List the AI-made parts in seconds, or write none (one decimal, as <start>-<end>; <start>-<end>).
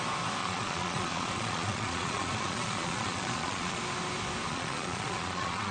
0.4-3.8; 4.5-5.7